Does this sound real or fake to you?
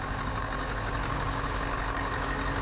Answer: fake